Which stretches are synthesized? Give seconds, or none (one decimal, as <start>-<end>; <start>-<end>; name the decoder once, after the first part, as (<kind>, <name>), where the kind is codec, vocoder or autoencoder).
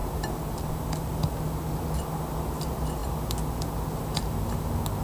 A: none